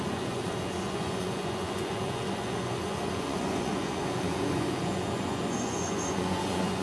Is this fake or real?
fake